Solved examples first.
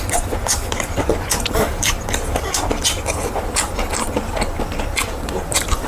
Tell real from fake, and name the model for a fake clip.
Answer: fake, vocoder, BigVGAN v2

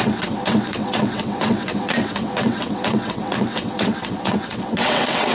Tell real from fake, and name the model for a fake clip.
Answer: fake, vocoder, WaveNeXt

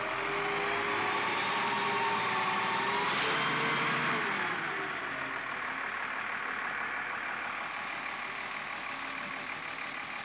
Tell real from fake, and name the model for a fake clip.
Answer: real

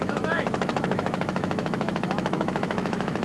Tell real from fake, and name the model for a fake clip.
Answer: fake, autoencoder, DAC-VAE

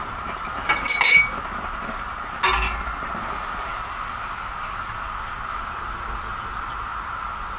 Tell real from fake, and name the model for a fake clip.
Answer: real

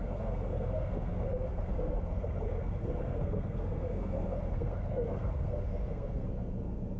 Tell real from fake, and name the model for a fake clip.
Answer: fake, codec, SNAC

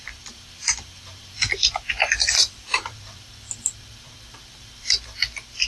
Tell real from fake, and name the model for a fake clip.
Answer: fake, vocoder, BigVGAN v2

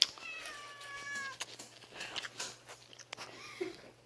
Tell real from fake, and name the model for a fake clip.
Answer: real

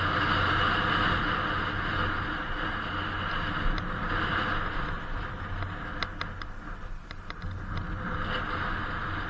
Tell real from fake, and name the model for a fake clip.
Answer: real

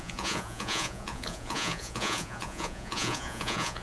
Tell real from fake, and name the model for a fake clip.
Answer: fake, vocoder, Vocos